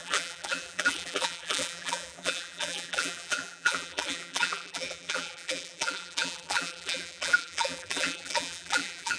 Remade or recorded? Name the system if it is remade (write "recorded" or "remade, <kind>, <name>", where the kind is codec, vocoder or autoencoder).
remade, vocoder, BigVGAN v2